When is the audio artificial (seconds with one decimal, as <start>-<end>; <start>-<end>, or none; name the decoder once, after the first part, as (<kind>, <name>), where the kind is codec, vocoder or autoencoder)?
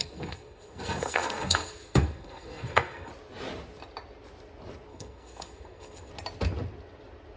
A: 0.0-3.1 (codec, SNAC); 4.9-6.1